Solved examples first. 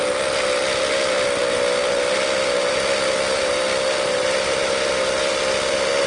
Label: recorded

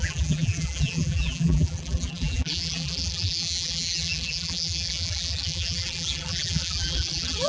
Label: remade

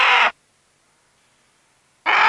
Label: recorded